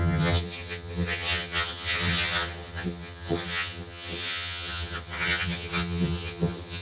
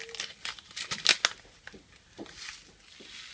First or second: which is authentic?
second